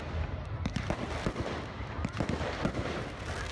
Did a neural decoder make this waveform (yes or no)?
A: no